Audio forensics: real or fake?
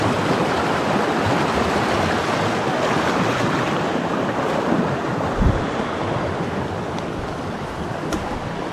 real